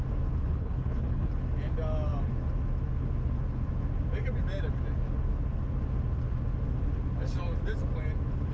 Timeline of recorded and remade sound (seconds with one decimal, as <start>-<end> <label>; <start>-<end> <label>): 0.0-0.4 recorded; 0.4-1.3 remade; 1.3-8.5 recorded